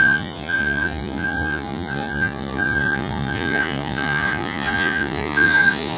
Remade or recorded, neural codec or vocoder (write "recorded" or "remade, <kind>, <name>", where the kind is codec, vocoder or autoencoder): remade, vocoder, Vocos